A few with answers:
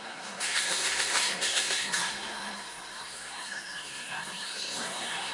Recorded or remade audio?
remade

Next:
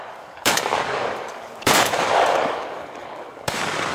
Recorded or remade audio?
remade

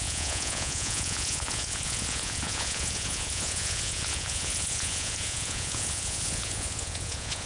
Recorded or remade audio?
remade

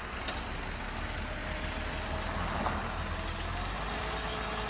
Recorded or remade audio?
recorded